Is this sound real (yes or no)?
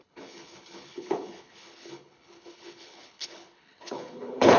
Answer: no